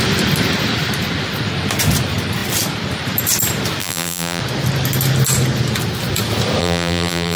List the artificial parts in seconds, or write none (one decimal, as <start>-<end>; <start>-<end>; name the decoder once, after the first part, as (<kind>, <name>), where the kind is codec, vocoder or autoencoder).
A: 3.8-4.4 (vocoder, BigVGAN v2); 6.6-7.4